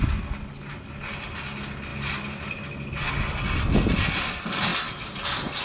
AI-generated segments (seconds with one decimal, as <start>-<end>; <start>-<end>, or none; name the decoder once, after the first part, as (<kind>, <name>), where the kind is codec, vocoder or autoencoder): 1.9-3.1 (vocoder, BigVGAN v2); 4.7-5.6